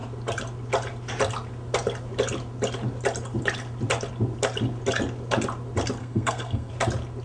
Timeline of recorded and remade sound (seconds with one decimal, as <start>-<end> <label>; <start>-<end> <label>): 0.0-6.0 recorded; 6.0-6.7 remade; 6.7-7.2 recorded